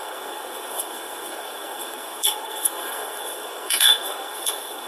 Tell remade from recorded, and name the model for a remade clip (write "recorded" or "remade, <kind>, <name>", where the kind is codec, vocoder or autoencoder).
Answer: remade, codec, SNAC